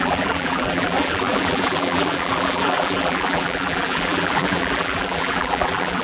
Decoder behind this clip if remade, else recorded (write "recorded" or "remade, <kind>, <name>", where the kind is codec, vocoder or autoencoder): remade, vocoder, BigVGAN v2